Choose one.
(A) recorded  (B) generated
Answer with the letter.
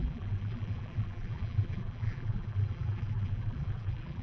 B